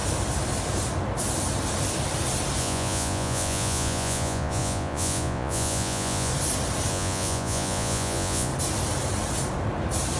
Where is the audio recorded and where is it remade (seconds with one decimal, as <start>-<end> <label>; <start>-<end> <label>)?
0.0-2.6 recorded; 2.6-6.3 remade; 6.3-6.9 recorded; 6.9-8.5 remade; 8.5-10.2 recorded